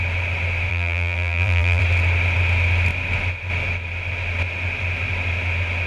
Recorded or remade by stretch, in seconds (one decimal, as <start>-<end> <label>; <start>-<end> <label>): 0.0-0.7 recorded; 0.7-1.8 remade; 1.8-5.9 recorded